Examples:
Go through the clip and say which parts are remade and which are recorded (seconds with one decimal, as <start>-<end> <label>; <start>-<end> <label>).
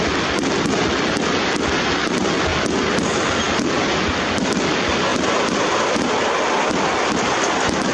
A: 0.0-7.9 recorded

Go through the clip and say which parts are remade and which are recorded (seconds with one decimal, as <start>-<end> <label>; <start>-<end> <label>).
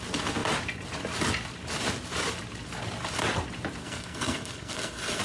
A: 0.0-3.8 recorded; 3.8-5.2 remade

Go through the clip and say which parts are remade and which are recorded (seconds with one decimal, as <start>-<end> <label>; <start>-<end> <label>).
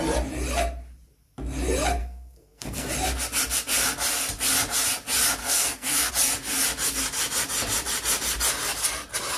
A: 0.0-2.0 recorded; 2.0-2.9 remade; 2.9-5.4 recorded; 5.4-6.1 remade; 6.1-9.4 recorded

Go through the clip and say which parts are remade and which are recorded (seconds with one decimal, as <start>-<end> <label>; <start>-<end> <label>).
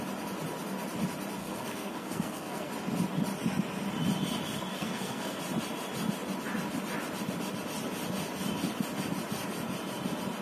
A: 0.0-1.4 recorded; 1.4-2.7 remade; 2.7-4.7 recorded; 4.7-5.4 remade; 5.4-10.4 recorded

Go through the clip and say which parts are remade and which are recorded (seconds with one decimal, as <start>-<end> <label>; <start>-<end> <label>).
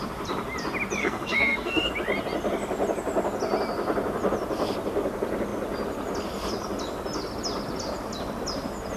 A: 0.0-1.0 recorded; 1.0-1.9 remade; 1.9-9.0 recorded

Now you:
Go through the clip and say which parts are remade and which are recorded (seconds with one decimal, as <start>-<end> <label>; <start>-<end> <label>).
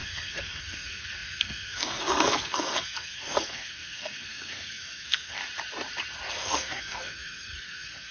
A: 0.0-5.4 remade; 5.4-6.3 recorded; 6.3-8.1 remade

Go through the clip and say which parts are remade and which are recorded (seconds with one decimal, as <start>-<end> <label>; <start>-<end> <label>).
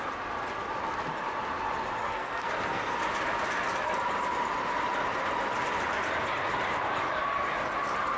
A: 0.0-2.0 recorded; 2.0-3.0 remade; 3.0-8.2 recorded